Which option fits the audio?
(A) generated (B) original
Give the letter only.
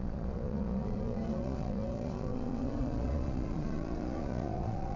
A